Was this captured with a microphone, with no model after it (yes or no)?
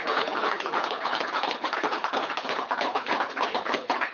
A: no